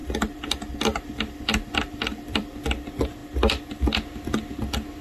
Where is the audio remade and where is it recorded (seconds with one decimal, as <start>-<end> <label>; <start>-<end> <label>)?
0.0-2.6 remade; 2.6-5.0 recorded